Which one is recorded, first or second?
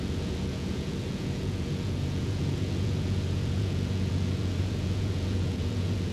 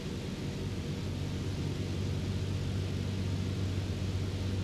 second